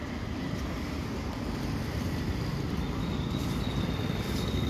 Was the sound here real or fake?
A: real